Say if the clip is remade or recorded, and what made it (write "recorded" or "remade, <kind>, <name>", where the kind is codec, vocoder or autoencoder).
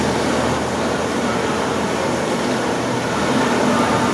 recorded